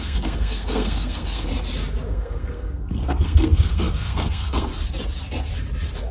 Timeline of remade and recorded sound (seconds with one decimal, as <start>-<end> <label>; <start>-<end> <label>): 0.0-1.5 remade; 1.5-2.1 recorded; 2.1-4.7 remade; 4.7-6.1 recorded